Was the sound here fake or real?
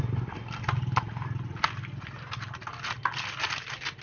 real